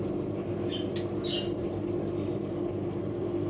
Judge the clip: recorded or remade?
recorded